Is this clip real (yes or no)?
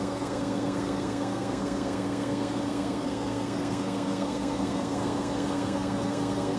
no